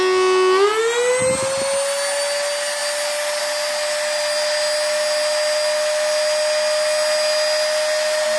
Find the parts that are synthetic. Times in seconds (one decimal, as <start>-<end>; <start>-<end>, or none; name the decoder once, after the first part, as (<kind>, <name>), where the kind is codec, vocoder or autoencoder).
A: none